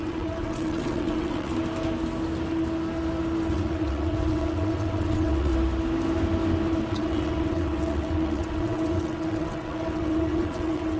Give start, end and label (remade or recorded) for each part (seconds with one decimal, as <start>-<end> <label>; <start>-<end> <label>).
0.0-1.5 remade; 1.5-3.5 recorded; 3.5-5.5 remade; 5.5-6.9 recorded; 6.9-11.0 remade